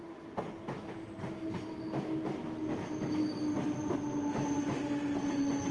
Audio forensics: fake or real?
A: real